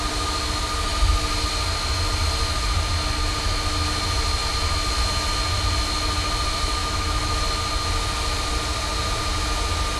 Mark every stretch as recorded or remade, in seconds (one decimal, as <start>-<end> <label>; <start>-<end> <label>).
0.0-6.8 recorded; 6.8-7.4 remade; 7.4-10.0 recorded